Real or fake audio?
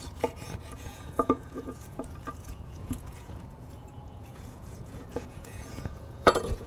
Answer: fake